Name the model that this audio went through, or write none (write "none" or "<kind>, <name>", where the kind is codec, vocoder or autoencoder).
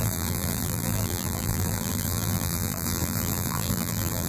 vocoder, BigVGAN v2